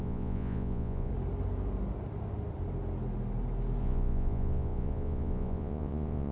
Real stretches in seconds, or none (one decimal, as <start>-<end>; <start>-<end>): 1.1-3.8